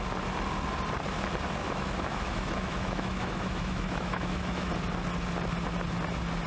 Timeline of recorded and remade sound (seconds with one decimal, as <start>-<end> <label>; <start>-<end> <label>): 0.0-1.6 recorded; 1.6-4.7 remade; 4.7-6.5 recorded